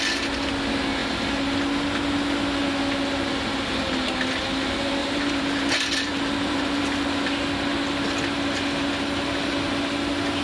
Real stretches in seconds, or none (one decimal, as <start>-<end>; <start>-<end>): 0.0-5.0; 6.8-10.4